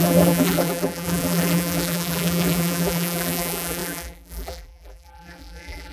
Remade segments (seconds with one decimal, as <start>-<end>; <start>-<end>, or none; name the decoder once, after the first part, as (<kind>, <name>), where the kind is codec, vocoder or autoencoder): 0.0-5.9 (vocoder, BigVGAN v2)